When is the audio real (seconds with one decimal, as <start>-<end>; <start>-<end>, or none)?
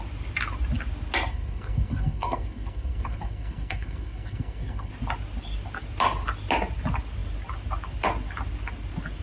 0.0-1.3; 4.9-9.2